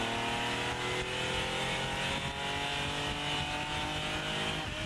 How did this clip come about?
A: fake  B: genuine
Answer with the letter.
B